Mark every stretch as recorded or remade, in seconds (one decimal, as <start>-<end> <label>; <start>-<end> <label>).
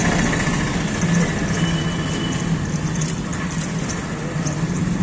0.0-5.0 recorded